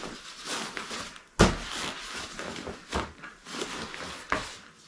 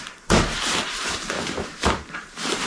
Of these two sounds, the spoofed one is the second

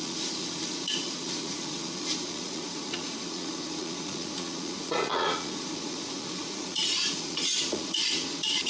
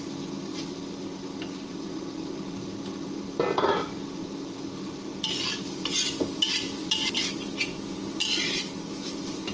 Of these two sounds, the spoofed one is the first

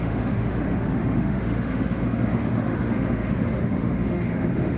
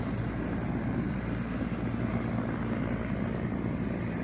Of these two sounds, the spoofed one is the first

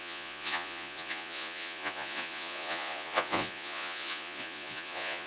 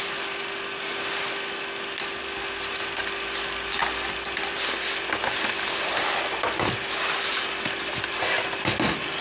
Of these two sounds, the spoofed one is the first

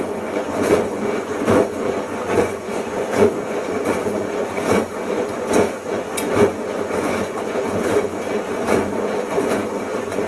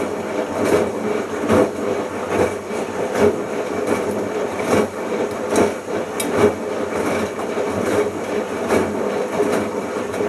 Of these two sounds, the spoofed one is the first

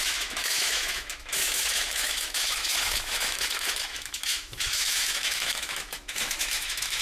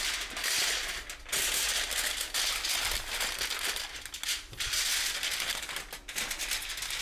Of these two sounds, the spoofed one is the first